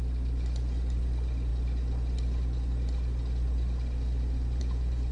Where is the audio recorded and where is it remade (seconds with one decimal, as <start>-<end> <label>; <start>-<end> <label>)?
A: 0.0-5.1 recorded